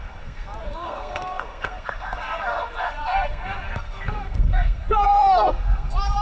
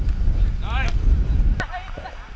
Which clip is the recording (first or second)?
second